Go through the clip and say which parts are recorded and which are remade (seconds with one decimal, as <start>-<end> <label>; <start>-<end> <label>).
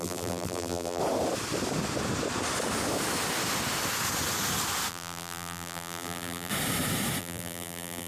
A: 0.0-1.0 remade; 1.0-4.9 recorded; 4.9-6.5 remade; 6.5-7.2 recorded; 7.2-8.1 remade